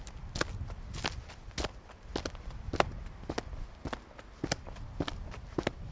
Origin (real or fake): real